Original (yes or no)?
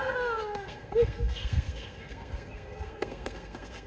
no